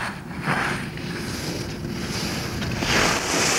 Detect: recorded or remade recorded